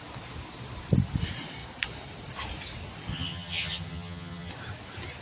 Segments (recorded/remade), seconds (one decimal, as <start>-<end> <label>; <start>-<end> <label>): 0.0-3.1 recorded; 3.1-4.5 remade; 4.5-5.2 recorded